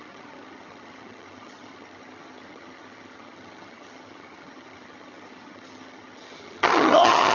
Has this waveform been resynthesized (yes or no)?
yes